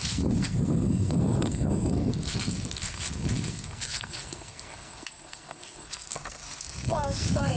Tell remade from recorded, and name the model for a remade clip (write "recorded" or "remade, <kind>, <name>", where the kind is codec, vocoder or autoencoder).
remade, codec, SNAC